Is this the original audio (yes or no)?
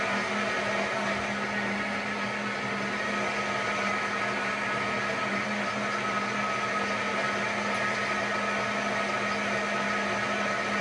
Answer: yes